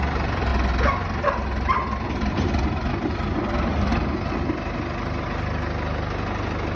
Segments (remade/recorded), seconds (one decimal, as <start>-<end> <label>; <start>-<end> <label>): 0.0-6.8 recorded